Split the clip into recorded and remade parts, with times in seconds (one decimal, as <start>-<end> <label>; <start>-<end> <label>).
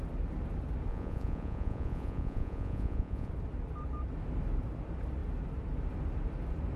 0.0-0.9 recorded; 0.9-3.3 remade; 3.3-6.8 recorded